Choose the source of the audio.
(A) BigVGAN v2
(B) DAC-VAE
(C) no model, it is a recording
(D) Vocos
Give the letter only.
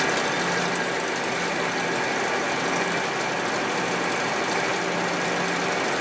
C